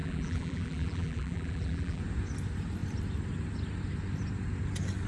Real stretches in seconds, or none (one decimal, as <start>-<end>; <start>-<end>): 2.0-5.1